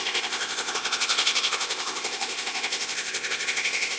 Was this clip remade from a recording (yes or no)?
yes